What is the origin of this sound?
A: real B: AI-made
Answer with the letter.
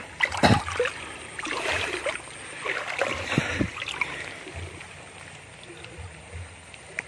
A